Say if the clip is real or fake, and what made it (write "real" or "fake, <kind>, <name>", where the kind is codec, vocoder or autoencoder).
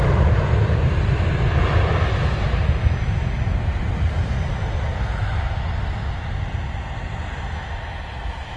real